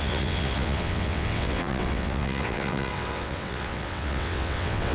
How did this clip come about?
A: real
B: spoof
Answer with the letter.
B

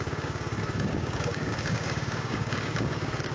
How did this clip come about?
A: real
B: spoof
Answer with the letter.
B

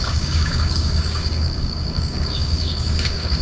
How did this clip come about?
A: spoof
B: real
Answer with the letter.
A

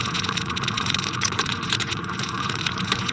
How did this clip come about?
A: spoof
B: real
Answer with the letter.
A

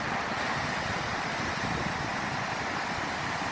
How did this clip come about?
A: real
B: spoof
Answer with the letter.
A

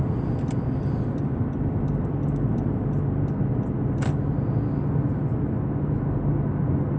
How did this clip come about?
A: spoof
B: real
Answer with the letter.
B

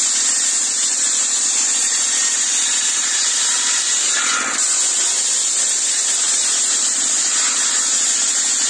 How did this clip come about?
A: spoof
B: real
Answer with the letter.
B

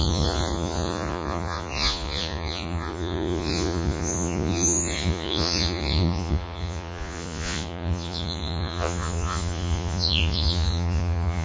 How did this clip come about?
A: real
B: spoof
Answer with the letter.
B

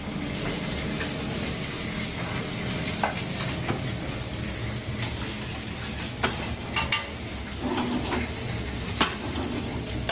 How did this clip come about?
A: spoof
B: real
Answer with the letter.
B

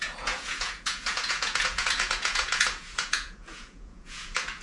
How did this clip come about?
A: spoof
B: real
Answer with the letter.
A